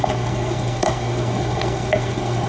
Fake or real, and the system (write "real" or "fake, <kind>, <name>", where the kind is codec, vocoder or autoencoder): fake, codec, SNAC